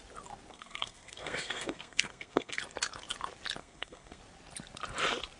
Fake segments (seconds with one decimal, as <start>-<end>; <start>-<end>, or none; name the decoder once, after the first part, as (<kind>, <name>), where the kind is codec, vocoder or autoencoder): 0.5-2.6 (codec, SNAC); 3.6-4.2